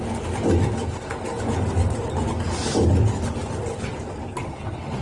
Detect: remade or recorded recorded